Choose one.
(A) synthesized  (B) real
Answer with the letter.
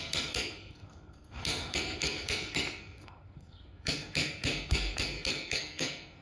A